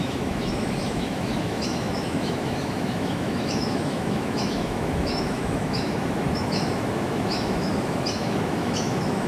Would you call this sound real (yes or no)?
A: no